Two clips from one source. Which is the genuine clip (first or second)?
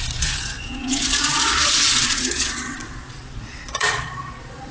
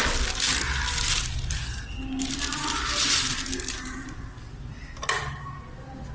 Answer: second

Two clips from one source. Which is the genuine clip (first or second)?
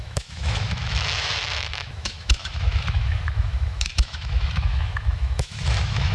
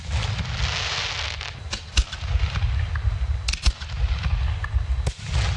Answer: second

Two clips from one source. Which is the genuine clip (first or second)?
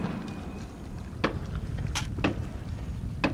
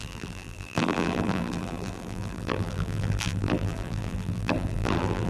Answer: first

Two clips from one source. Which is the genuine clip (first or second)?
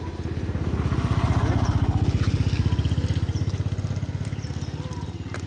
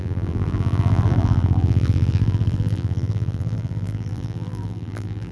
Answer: first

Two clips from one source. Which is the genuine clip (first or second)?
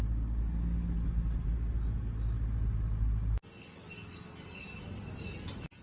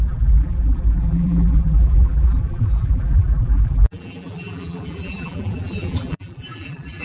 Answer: first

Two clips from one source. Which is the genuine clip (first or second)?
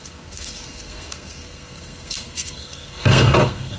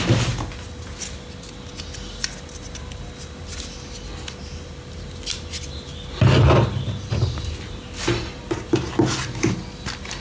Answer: second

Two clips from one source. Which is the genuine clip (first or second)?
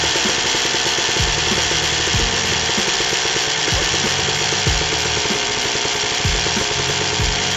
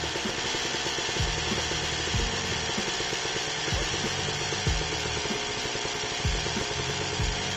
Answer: second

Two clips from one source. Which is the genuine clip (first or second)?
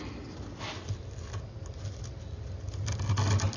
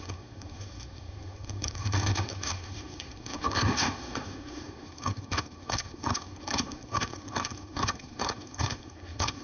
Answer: first